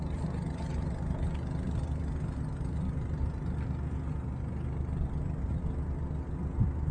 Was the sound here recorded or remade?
recorded